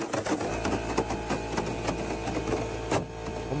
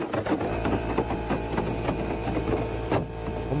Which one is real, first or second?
first